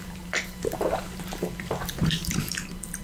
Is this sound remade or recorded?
remade